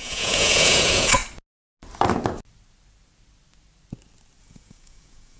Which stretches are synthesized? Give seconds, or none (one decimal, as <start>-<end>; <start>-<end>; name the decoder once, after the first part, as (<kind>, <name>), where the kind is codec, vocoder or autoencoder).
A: 0.0-1.2 (vocoder, Vocos); 4.4-5.4